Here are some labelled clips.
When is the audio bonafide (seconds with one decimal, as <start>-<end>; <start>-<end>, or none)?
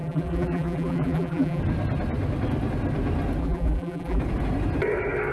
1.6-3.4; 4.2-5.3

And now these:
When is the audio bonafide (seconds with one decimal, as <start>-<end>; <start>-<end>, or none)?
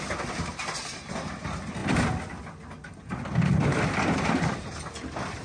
0.0-5.4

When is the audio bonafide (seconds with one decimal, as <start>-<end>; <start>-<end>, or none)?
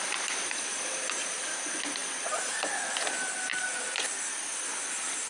0.0-0.7; 1.6-5.3